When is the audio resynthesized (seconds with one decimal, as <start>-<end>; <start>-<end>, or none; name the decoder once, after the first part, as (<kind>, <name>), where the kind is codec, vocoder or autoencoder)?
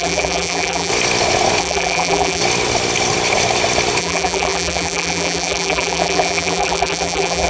0.0-0.9 (vocoder, BigVGAN v2); 1.6-2.4; 4.0-7.5